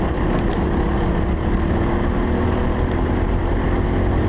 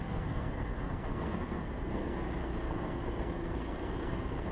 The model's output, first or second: second